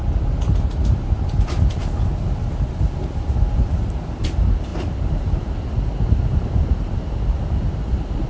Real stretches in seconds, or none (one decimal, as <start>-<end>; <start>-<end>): 0.0-8.3